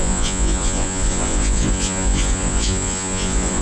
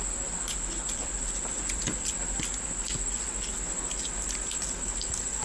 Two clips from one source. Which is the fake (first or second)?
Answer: first